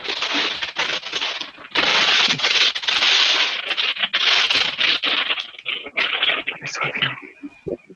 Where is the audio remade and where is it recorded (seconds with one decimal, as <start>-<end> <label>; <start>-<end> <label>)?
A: 0.0-1.9 recorded; 1.9-2.7 remade; 2.7-8.0 recorded

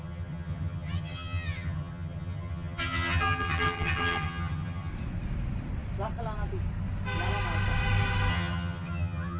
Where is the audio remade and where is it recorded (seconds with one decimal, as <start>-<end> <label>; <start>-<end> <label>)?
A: 0.0-4.9 remade; 4.9-8.3 recorded; 8.3-9.4 remade

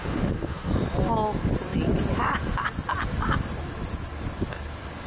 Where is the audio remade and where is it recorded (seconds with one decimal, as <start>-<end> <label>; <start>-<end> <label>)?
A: 0.0-0.7 remade; 0.7-5.1 recorded

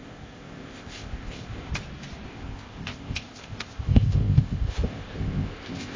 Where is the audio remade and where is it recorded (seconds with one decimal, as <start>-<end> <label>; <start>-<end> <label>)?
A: 0.0-1.7 remade; 1.7-2.3 recorded; 2.3-6.0 remade

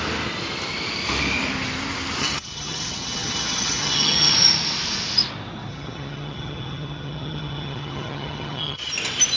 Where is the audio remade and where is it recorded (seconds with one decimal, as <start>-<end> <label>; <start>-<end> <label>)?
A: 0.0-2.2 recorded; 2.2-4.3 remade; 4.3-5.7 recorded; 5.7-8.9 remade; 8.9-9.4 recorded

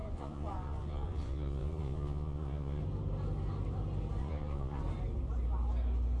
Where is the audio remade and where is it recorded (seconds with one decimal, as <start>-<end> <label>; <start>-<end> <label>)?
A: 0.0-2.8 remade; 2.8-4.2 recorded; 4.2-4.8 remade; 4.8-6.2 recorded

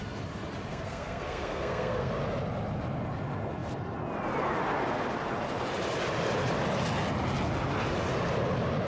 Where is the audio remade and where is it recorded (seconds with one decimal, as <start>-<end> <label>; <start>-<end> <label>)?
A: 0.0-0.7 recorded; 0.7-2.1 remade; 2.1-8.9 recorded